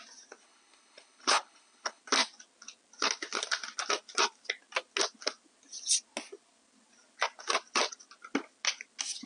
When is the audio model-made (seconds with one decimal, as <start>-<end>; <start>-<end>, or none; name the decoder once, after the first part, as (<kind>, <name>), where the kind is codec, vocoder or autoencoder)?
0.4-2.0 (codec, HILCodec)